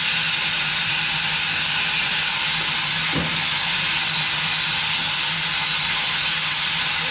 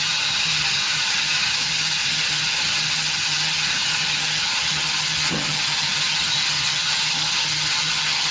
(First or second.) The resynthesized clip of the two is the second